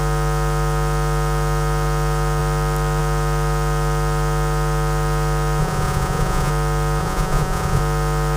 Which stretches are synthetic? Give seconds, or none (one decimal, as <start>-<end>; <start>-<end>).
5.6-6.5; 7.0-7.8